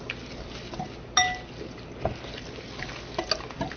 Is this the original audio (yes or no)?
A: yes